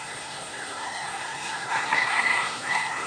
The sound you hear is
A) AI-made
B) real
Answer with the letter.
A